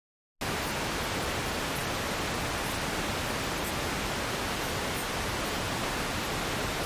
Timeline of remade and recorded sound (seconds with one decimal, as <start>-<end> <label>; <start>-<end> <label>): 0.0-6.9 recorded